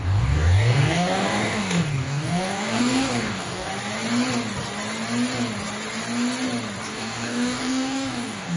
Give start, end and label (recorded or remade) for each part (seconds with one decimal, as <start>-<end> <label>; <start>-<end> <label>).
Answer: 0.0-3.7 remade; 3.7-6.8 recorded; 6.8-8.6 remade

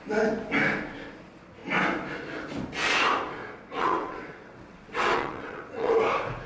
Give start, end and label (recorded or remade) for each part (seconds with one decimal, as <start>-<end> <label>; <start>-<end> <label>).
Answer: 0.0-3.7 recorded; 3.7-6.0 remade; 6.0-6.5 recorded

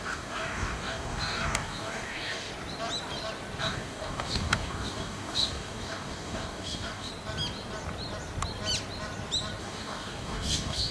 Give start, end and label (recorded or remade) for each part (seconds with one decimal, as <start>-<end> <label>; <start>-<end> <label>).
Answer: 0.0-2.5 remade; 2.5-3.6 recorded; 3.6-7.1 remade; 7.1-9.6 recorded; 9.6-10.9 remade

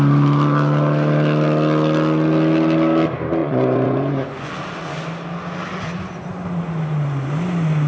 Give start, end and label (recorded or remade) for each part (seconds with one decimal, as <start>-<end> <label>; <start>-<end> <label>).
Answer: 0.0-3.4 recorded; 3.4-4.5 remade; 4.5-7.9 recorded